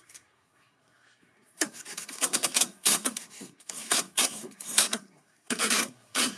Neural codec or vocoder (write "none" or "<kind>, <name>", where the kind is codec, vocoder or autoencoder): codec, SNAC